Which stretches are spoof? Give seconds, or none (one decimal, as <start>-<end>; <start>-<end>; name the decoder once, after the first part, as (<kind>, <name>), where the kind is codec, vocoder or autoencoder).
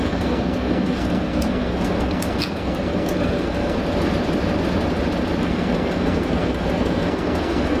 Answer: 0.0-3.8 (codec, SNAC); 5.4-7.8